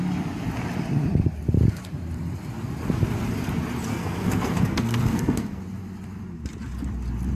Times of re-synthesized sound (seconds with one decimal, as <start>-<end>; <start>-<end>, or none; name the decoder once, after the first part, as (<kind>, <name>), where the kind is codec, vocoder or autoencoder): 3.9-5.6 (codec, SNAC)